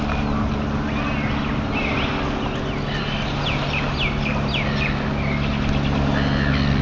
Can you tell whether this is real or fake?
real